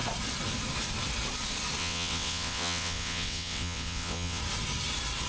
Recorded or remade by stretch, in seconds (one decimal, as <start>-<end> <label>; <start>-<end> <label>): 0.0-1.8 recorded; 1.8-4.4 remade; 4.4-5.3 recorded